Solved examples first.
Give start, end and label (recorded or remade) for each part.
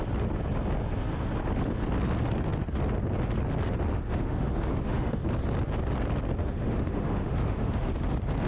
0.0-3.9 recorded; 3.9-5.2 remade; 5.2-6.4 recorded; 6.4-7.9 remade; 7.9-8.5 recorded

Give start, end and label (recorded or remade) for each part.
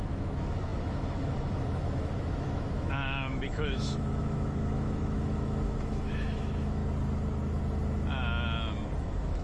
0.0-6.8 remade; 6.8-9.0 recorded; 9.0-9.4 remade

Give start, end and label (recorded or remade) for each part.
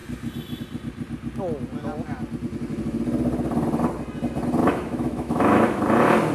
0.0-4.6 recorded; 4.6-5.8 remade; 5.8-6.3 recorded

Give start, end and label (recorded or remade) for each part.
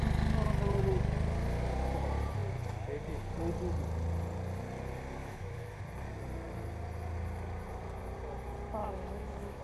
0.0-5.2 recorded; 5.2-5.8 remade; 5.8-8.8 recorded; 8.8-9.6 remade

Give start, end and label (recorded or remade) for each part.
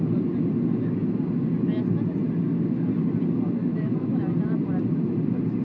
0.0-3.6 recorded; 3.6-4.2 remade; 4.2-5.6 recorded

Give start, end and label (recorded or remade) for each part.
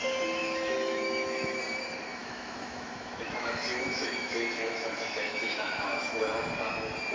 0.0-0.4 recorded; 0.4-1.6 remade; 1.6-2.2 recorded; 2.2-6.2 remade; 6.2-7.1 recorded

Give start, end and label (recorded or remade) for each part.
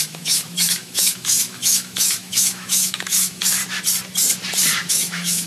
0.0-3.6 remade; 3.6-4.9 recorded; 4.9-5.5 remade